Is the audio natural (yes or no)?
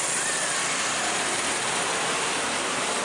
yes